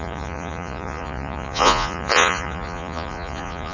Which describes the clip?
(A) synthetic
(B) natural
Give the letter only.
A